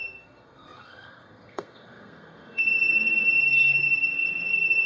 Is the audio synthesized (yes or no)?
yes